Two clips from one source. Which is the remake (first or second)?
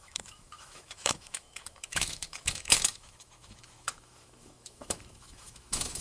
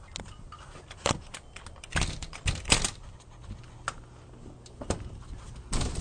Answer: first